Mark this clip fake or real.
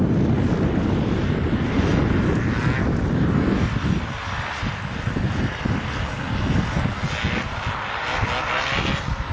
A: real